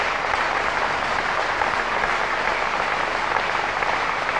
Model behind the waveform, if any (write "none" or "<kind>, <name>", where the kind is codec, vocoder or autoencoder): none